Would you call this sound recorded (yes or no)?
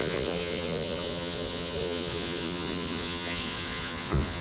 no